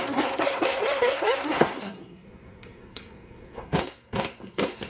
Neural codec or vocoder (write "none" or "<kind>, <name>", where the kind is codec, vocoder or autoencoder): codec, SNAC